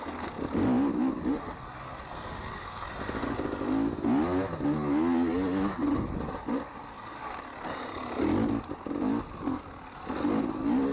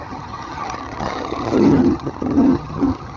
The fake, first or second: second